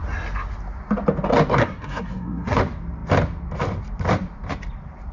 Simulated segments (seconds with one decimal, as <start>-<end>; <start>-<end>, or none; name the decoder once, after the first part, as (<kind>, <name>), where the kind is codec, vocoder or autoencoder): 1.5-2.6 (codec, SNAC)